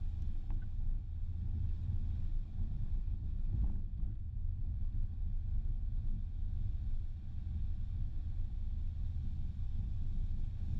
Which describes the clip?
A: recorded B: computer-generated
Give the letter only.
A